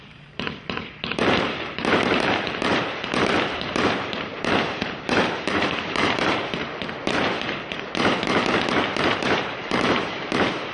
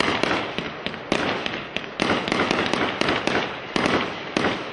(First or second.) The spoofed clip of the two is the first